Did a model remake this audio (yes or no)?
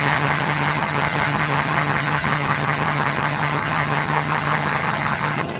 yes